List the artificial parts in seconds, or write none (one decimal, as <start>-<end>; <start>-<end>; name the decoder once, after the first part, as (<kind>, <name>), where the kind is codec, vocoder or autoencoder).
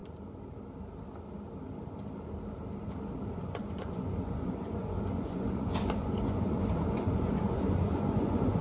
3.3-8.6 (vocoder, Vocos)